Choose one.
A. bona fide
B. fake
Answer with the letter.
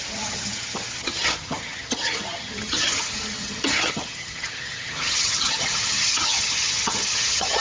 B